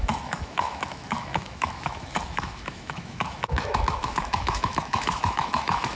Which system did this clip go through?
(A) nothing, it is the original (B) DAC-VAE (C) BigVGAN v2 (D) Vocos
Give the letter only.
B